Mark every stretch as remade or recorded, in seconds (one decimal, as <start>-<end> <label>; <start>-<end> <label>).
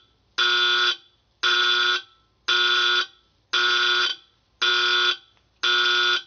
0.0-6.3 recorded